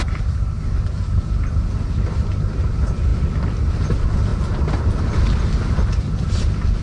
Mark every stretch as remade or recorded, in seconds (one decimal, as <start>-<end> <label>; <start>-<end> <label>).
0.0-6.8 recorded